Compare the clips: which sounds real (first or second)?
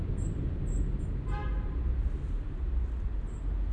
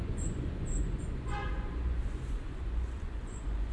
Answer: first